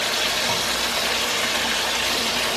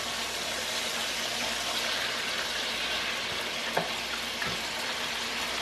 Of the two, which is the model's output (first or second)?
second